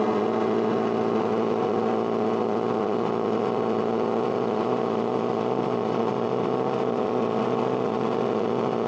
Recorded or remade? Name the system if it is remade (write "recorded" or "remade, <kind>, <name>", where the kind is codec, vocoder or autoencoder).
remade, vocoder, Vocos